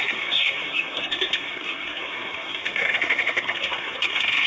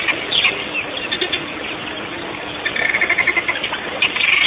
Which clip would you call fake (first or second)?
first